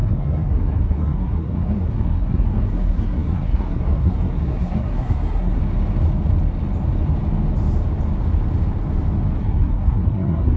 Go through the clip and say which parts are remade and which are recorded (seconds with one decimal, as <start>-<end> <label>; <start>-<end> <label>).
0.0-5.6 remade; 5.6-9.4 recorded; 9.4-10.6 remade